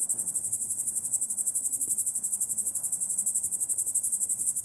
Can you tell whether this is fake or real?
fake